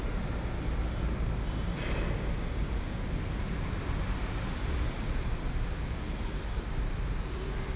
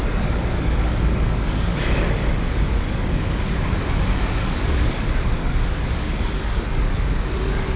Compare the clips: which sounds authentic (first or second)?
first